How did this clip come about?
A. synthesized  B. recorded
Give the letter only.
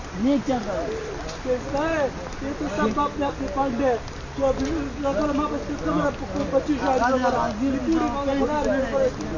B